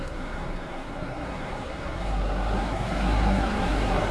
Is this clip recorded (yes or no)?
no